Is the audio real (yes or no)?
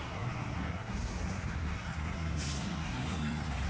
no